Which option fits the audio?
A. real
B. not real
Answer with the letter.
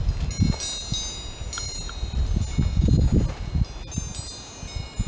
A